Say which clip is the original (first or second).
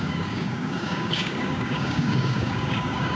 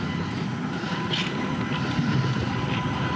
second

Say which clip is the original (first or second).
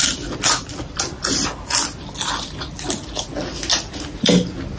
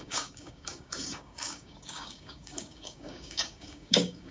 first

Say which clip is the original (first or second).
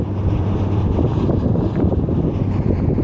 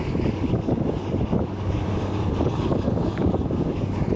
first